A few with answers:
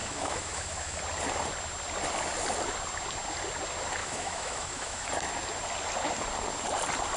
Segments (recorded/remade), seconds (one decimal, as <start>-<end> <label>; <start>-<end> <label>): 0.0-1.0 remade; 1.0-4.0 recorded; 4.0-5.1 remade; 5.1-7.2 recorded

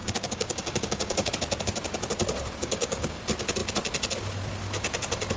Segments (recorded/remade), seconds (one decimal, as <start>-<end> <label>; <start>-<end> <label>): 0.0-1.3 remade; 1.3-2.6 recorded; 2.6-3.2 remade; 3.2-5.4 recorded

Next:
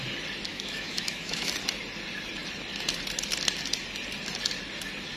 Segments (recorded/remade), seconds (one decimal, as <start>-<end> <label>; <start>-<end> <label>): 0.0-0.5 recorded; 0.5-1.5 remade; 1.5-5.2 recorded